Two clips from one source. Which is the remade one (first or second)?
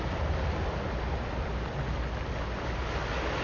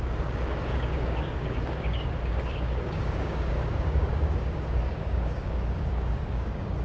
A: second